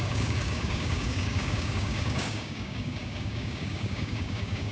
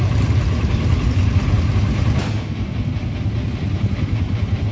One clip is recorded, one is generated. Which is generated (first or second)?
first